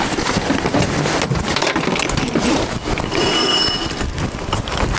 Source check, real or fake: real